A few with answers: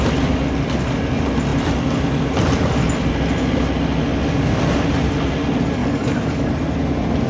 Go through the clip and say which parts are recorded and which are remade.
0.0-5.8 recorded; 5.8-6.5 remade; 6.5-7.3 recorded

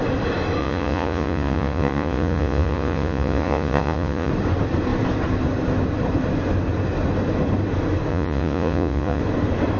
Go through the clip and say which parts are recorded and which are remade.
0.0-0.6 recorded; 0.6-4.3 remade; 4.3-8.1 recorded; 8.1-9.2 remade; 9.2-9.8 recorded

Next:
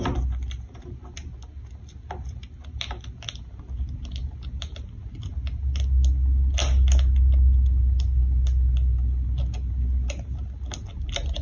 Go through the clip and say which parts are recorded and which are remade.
0.0-11.4 recorded

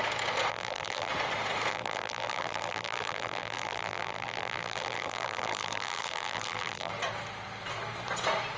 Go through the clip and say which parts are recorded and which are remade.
0.0-0.5 recorded; 0.5-1.1 remade; 1.1-1.7 recorded; 1.7-6.9 remade; 6.9-8.6 recorded